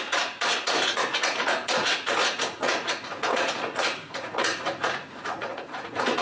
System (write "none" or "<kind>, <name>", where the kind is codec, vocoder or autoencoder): vocoder, Vocos